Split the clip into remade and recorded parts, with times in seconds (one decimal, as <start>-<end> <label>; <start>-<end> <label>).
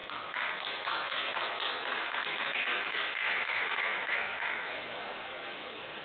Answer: 0.0-6.0 remade